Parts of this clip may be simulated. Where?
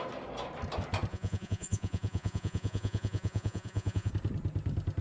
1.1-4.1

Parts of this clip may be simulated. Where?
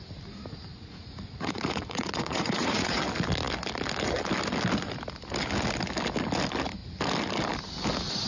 0.7-3.0